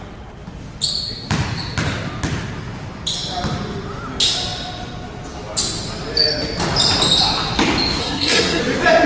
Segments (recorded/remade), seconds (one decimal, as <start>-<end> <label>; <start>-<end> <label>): 0.0-8.0 recorded; 8.0-8.6 remade; 8.6-9.1 recorded